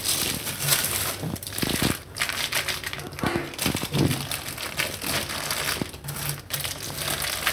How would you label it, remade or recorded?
recorded